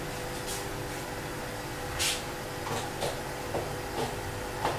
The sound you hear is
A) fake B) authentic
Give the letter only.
B